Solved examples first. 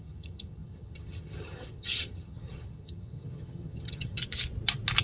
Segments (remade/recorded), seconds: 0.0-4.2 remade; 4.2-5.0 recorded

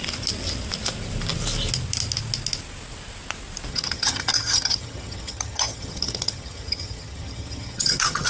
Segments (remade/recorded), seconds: 0.0-3.7 recorded; 3.7-8.3 remade

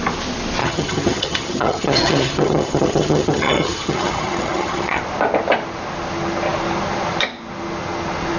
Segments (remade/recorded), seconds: 0.0-0.6 recorded; 0.6-5.0 remade; 5.0-8.4 recorded

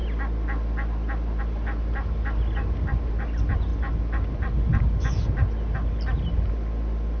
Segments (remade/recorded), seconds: 0.0-7.2 recorded

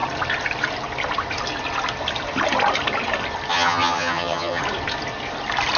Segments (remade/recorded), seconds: 0.0-3.5 recorded; 3.5-4.6 remade; 4.6-5.8 recorded

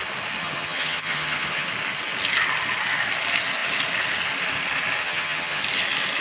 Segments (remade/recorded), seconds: 0.0-0.4 recorded; 0.4-1.7 remade; 1.7-5.0 recorded; 5.0-5.6 remade; 5.6-6.2 recorded

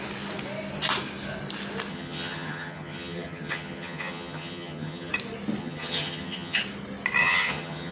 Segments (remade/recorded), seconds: 0.0-1.9 recorded; 1.9-5.1 remade; 5.1-5.6 recorded; 5.6-6.6 remade; 6.6-7.2 recorded; 7.2-7.9 remade